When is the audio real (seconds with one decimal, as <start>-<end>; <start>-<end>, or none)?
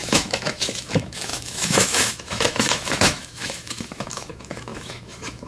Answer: none